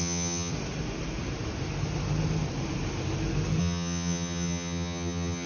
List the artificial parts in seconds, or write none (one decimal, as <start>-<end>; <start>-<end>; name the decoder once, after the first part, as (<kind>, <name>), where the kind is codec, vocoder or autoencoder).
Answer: 0.0-0.5 (vocoder, HiFi-GAN); 3.6-5.5